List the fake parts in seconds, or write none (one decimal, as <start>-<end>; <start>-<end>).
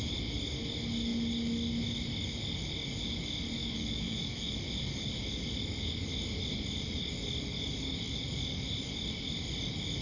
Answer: 3.6-4.5